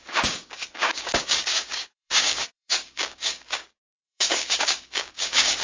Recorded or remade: remade